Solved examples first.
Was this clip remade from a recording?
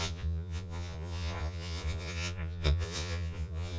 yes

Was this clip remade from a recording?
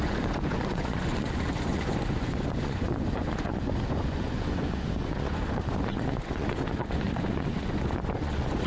yes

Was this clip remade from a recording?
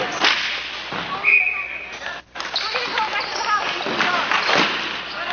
no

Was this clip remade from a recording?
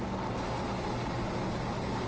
no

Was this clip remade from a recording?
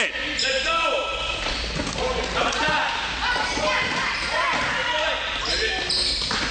no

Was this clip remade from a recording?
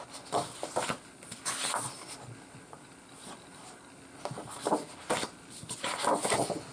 no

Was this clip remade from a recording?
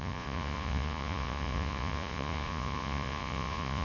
yes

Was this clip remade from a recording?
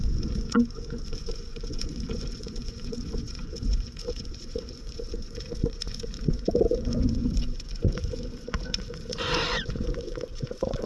yes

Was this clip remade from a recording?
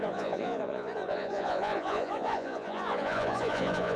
yes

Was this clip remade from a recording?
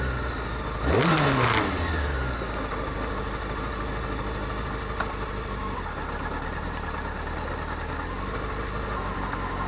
no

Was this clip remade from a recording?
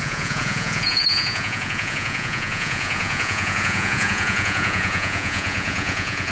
yes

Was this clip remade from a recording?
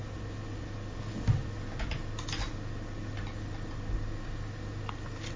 no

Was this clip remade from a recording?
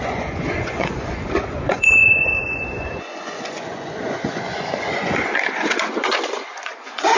yes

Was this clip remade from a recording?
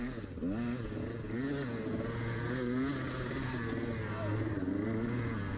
no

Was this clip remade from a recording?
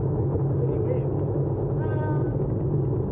no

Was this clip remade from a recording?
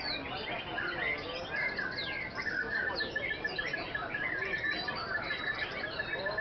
no